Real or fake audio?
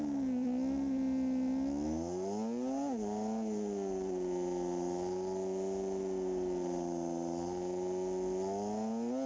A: real